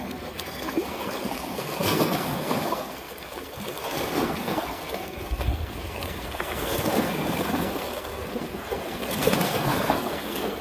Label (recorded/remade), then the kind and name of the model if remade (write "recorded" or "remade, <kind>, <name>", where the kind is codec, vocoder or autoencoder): remade, codec, SNAC